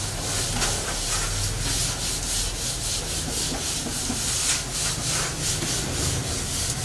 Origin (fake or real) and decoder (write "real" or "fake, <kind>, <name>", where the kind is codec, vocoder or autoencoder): real